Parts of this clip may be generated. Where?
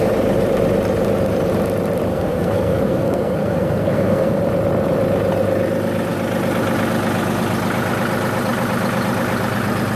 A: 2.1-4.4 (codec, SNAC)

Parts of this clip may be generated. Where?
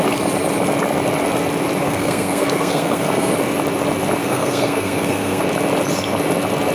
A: 1.8-3.3 (codec, SNAC); 4.2-5.4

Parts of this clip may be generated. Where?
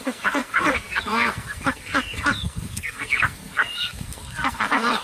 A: 0.0-5.0 (codec, SNAC)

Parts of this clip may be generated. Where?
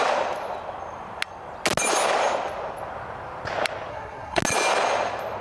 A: 3.9-4.4 (codec, SNAC)